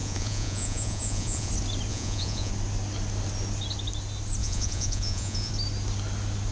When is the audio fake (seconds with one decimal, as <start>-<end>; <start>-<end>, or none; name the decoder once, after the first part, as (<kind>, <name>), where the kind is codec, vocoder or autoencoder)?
0.0-1.5 (vocoder, Vocos); 1.9-2.5; 4.4-5.5